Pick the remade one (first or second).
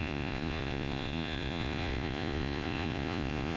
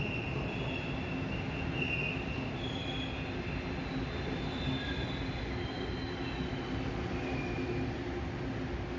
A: first